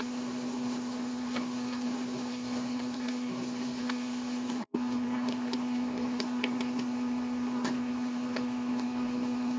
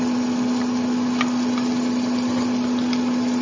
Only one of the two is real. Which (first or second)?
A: second